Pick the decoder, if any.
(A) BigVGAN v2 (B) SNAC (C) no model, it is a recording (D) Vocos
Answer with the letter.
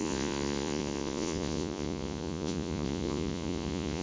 D